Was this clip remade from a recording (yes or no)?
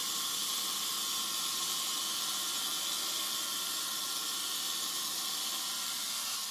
no